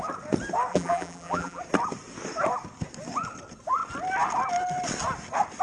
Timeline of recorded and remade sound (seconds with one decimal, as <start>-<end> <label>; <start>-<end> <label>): 0.0-0.7 recorded; 0.7-1.6 remade; 1.6-5.6 recorded

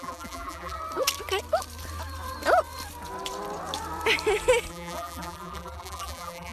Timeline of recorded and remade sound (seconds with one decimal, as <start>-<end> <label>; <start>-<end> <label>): 0.0-0.8 remade; 0.8-4.7 recorded; 4.7-6.5 remade

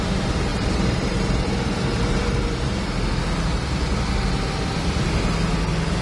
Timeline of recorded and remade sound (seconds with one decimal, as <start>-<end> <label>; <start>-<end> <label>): 0.0-0.5 recorded; 0.5-2.4 remade; 2.4-6.0 recorded